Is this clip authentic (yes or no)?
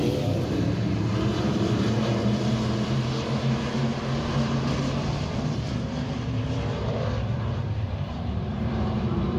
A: no